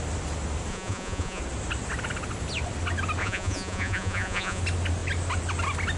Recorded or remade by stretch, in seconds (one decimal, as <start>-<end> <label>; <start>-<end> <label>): 0.0-0.7 recorded; 0.7-1.4 remade; 1.4-3.2 recorded; 3.2-4.6 remade; 4.6-6.0 recorded